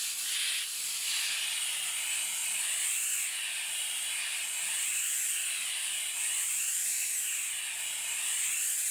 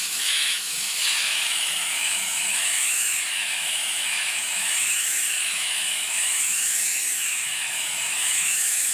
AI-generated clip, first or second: second